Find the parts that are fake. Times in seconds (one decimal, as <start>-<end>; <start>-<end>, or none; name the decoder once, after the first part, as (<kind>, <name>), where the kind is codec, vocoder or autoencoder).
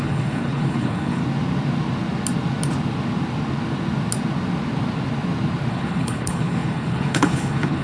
0.0-1.2 (codec, HILCodec); 5.7-7.8